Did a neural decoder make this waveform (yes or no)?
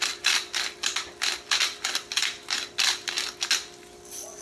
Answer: no